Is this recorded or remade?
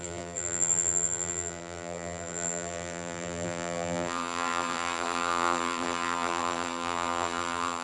remade